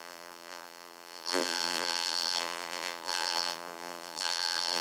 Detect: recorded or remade remade